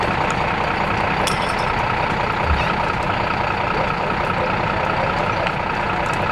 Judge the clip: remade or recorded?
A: recorded